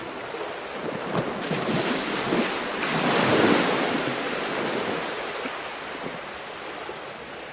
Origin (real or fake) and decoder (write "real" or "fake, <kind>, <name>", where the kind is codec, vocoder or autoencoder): real